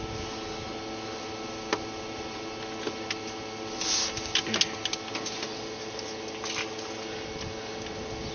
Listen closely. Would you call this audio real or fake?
real